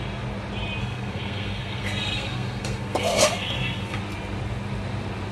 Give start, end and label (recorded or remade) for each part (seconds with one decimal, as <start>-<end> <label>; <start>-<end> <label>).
0.0-0.8 recorded; 0.8-4.0 remade; 4.0-5.3 recorded